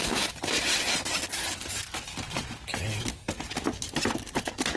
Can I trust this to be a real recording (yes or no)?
yes